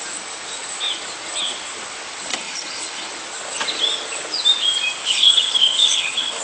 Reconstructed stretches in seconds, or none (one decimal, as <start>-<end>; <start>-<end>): 2.3-3.1; 5.0-6.4